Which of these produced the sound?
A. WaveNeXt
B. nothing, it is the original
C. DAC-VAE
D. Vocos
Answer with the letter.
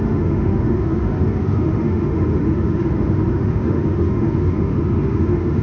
C